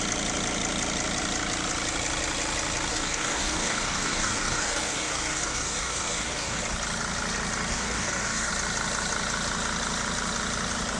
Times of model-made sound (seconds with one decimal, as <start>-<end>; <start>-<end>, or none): 2.9-6.6; 7.7-8.5